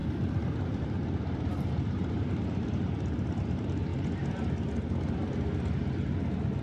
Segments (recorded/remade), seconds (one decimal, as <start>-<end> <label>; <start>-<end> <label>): 0.0-3.9 remade; 3.9-6.6 recorded

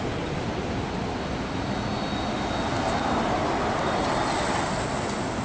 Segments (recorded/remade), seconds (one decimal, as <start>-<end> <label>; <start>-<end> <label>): 0.0-3.4 recorded; 3.4-3.9 remade; 3.9-5.4 recorded

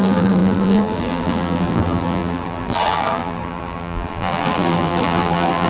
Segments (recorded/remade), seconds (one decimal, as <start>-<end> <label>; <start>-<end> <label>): 0.0-5.7 remade

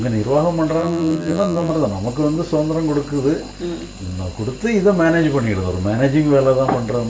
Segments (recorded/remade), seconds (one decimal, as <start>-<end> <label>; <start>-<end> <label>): 0.0-0.8 recorded; 0.8-1.7 remade; 1.7-7.1 recorded

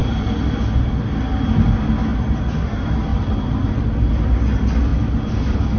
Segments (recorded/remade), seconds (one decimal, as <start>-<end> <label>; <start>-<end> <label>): 0.0-3.1 recorded; 3.1-3.7 remade; 3.7-4.9 recorded; 4.9-5.8 remade

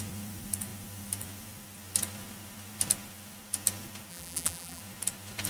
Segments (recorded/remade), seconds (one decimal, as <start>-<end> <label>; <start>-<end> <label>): 0.0-4.1 recorded; 4.1-4.8 remade; 4.8-5.5 recorded